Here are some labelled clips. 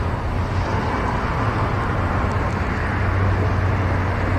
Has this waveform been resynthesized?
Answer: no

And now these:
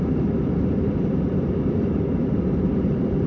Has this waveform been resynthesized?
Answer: yes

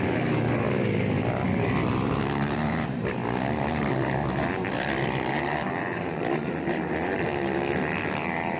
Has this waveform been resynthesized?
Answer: yes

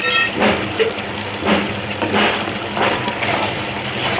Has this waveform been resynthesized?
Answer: yes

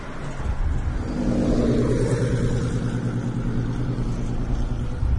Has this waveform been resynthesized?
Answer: no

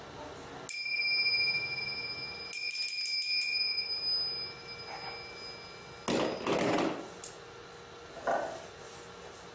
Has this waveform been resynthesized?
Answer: no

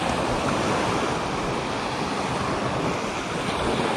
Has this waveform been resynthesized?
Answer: no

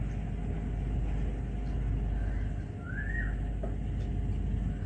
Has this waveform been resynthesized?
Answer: no